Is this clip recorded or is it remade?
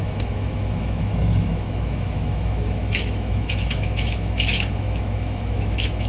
remade